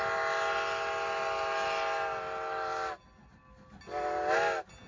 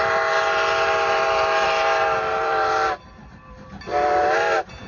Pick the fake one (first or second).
second